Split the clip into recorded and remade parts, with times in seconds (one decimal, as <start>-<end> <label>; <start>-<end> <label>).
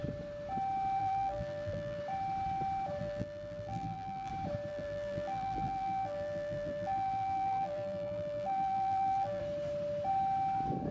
0.0-1.0 recorded; 1.0-2.0 remade; 2.0-3.0 recorded; 3.0-4.3 remade; 4.3-4.7 recorded; 4.7-9.4 remade; 9.4-10.9 recorded